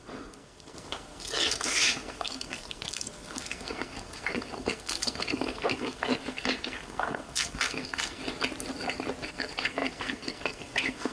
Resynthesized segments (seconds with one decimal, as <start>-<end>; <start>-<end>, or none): 0.0-8.2; 9.3-11.1